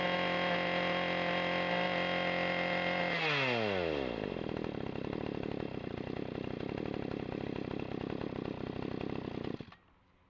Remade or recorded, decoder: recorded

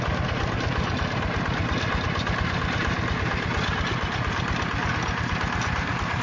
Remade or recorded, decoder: recorded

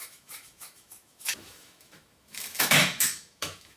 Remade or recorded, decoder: remade, autoencoder, DAC-VAE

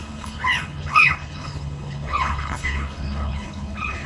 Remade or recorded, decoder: remade, codec, HILCodec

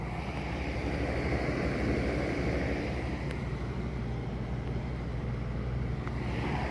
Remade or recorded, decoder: remade, vocoder, BigVGAN v2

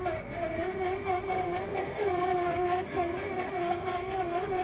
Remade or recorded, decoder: remade, codec, SNAC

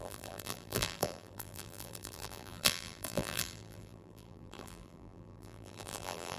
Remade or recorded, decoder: remade, vocoder, BigVGAN v2